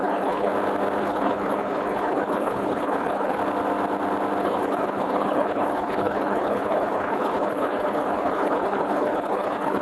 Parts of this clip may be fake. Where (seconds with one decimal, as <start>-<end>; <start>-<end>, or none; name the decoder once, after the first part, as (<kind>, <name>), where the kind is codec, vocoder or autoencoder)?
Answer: 0.0-0.5 (codec, HILCodec); 1.0-3.4; 4.4-9.8